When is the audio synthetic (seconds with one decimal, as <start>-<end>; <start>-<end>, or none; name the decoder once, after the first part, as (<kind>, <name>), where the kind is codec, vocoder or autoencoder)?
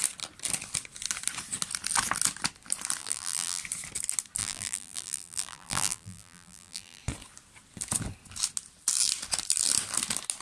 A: 3.0-3.6 (vocoder, BigVGAN v2); 4.4-7.0